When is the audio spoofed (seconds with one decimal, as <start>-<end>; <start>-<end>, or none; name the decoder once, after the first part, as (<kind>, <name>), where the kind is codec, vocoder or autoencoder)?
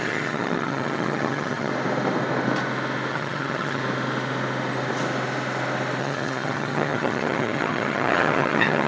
0.0-1.7 (vocoder, HiFi-GAN); 3.1-3.8; 6.0-8.9